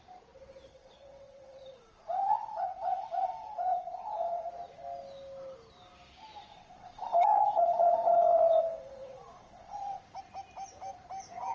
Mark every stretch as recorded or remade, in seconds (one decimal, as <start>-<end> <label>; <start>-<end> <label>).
0.0-0.7 recorded; 0.7-4.5 remade; 4.5-6.5 recorded; 6.5-10.0 remade; 10.0-11.5 recorded